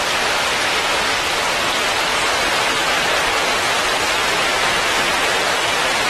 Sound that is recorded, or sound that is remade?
recorded